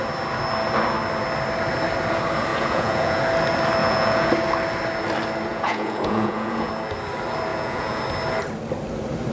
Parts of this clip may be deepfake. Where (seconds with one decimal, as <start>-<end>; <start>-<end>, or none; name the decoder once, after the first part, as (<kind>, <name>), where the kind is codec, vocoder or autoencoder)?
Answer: 2.5-3.2 (vocoder, Vocos); 3.8-4.3; 5.5-6.7; 7.5-8.0